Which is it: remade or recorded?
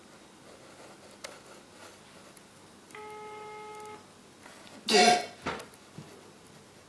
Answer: recorded